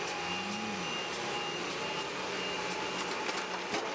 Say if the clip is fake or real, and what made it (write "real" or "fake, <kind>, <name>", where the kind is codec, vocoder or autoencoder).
real